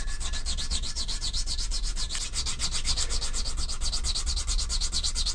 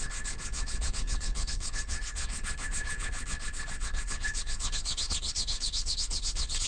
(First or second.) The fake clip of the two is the second